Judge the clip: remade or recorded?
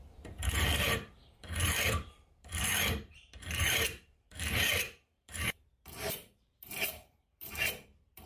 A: remade